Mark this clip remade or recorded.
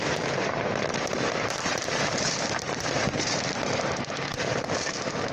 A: remade